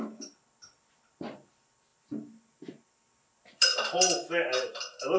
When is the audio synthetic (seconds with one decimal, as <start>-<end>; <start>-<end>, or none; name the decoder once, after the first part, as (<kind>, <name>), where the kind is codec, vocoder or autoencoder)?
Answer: none